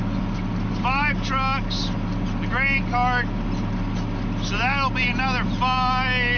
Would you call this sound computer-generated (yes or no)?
no